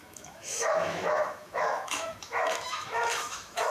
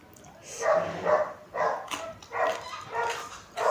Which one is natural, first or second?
second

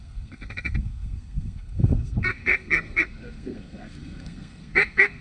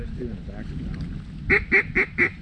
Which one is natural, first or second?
second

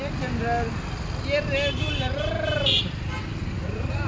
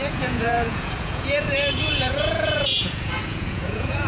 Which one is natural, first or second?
first